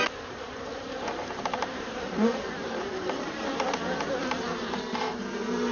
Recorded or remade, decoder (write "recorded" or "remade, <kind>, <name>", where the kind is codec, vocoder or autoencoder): remade, vocoder, BigVGAN v2